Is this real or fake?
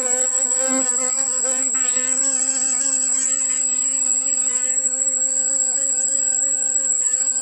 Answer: real